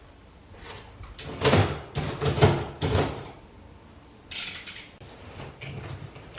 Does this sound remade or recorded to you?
recorded